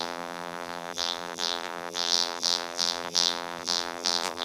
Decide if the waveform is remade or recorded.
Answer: remade